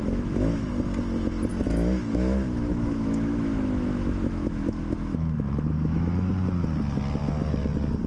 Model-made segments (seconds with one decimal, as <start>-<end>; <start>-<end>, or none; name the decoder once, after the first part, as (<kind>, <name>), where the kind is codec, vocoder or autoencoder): 0.0-0.7 (autoencoder, DAC-VAE); 1.5-6.3